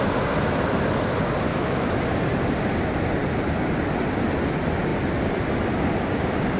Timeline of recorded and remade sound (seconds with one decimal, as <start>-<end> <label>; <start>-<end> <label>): 0.0-1.5 recorded; 1.5-2.0 remade; 2.0-6.6 recorded